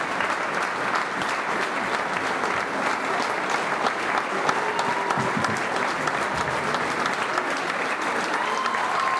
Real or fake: real